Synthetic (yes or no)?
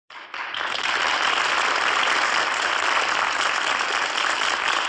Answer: no